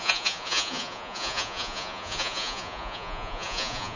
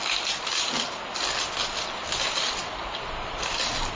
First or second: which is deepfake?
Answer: first